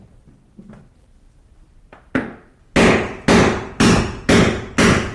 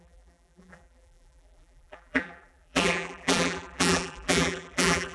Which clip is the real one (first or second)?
first